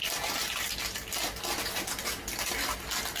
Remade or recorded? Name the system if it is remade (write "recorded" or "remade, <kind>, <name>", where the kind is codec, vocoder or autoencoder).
recorded